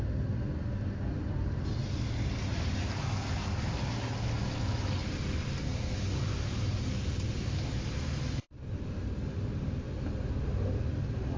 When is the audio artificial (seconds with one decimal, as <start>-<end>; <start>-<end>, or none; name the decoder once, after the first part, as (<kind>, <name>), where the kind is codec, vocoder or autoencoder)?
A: none